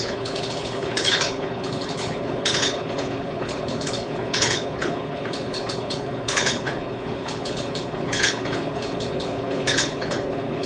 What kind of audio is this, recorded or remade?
remade